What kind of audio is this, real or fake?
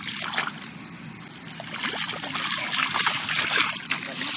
real